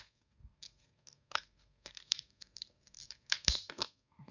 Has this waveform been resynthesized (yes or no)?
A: yes